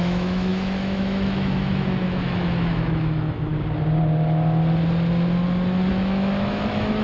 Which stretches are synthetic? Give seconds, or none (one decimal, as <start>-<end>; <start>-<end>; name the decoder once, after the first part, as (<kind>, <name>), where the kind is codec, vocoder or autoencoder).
0.0-3.5 (autoencoder, DAC-VAE); 5.9-7.0

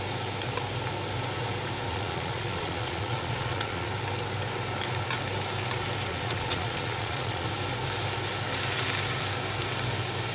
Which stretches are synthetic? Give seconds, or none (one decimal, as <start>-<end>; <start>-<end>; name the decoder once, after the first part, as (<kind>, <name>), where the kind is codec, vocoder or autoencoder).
1.9-3.9 (vocoder, Vocos); 6.1-7.5

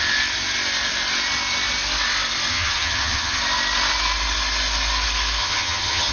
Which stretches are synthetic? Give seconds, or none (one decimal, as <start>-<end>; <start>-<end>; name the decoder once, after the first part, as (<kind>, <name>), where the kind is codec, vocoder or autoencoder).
2.5-3.4 (vocoder, HiFi-GAN); 5.4-6.1

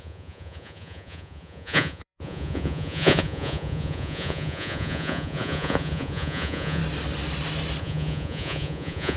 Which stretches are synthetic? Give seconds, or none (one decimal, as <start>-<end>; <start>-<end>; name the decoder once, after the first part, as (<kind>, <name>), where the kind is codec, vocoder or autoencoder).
0.0-6.8 (vocoder, Vocos); 7.8-9.2

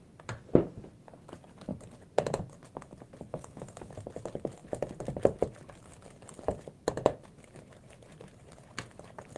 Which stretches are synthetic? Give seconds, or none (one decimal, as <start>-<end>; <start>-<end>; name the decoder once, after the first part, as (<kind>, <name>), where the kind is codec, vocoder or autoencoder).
3.3-3.9 (autoencoder, DAC-VAE)